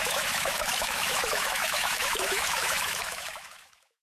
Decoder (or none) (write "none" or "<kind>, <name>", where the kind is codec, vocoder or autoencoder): autoencoder, DAC-VAE